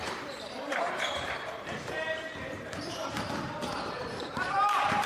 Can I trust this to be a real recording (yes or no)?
no